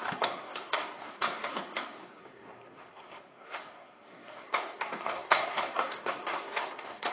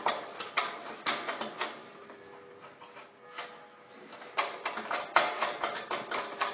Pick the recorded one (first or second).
second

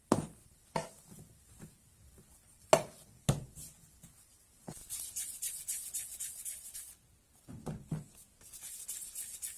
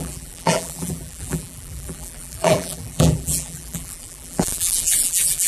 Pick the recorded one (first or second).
first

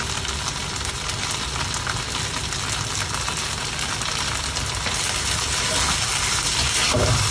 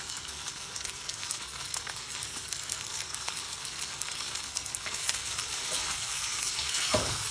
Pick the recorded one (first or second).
first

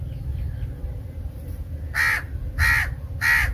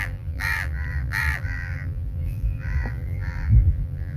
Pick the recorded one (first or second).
first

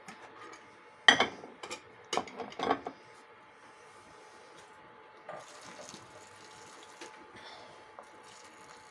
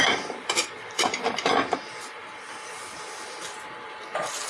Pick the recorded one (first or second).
first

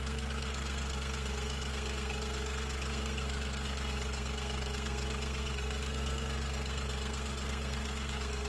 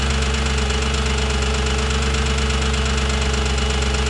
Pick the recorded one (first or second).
second